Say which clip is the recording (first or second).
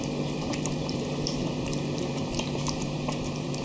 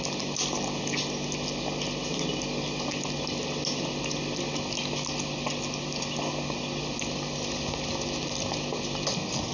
second